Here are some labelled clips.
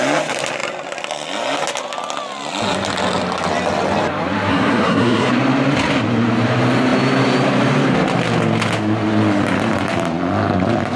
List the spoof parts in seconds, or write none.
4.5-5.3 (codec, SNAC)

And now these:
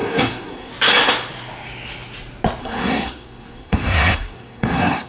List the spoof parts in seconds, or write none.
0.0-0.7 (codec, SNAC); 2.6-5.1

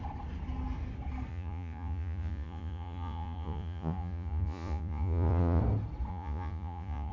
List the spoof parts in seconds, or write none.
1.3-5.6 (vocoder, Vocos); 6.1-7.1

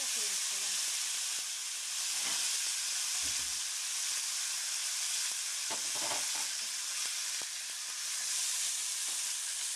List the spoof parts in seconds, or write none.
none

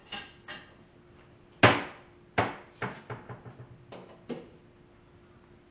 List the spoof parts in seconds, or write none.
none

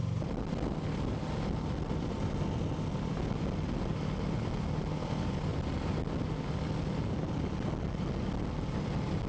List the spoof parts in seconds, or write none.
none